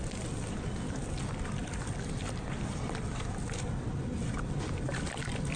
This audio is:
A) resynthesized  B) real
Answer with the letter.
B